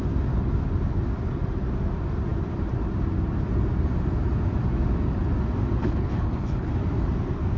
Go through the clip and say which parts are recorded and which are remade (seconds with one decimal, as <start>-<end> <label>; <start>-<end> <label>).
0.0-5.8 recorded; 5.8-6.7 remade; 6.7-7.6 recorded